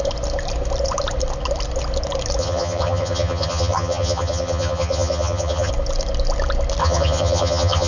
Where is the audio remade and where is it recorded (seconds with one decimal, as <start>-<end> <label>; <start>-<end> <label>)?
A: 0.0-2.4 recorded; 2.4-5.7 remade; 5.7-6.8 recorded; 6.8-7.9 remade